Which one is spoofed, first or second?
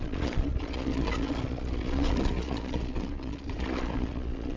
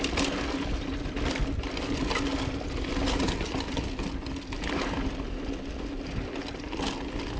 first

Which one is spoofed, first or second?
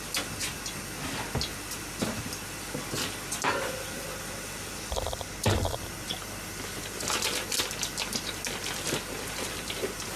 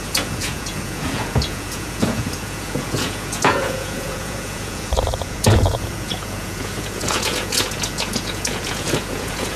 second